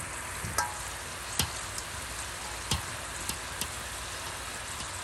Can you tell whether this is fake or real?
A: real